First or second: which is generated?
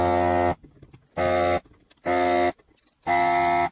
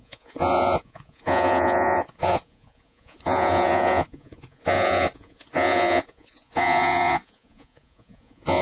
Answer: second